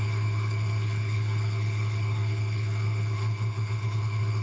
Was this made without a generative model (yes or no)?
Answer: no